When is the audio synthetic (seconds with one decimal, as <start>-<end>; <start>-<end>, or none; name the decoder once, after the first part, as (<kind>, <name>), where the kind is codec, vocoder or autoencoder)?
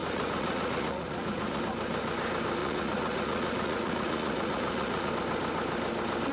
0.0-1.6 (vocoder, Vocos); 2.6-5.1